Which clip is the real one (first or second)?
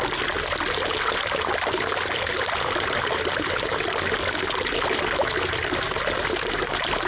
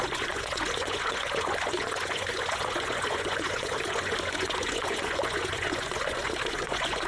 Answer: first